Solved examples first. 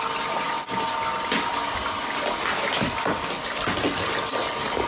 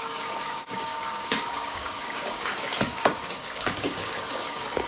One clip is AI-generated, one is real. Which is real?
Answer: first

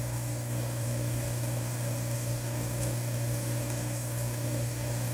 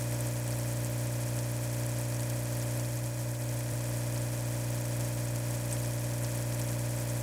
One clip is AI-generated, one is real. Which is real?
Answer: second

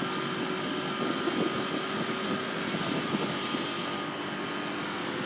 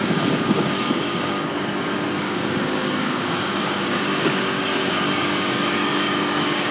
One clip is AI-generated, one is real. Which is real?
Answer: first